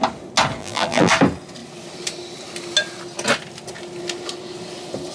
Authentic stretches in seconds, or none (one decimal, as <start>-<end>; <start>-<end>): 0.0-0.6; 1.1-5.1

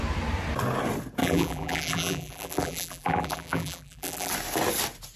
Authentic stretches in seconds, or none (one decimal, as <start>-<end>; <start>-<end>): 0.0-1.2; 4.3-5.2

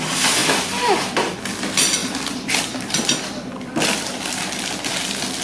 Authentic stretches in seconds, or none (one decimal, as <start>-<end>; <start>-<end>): 0.0-0.4; 1.6-2.0; 4.3-5.4